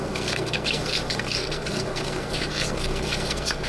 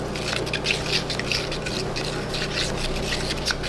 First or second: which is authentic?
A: second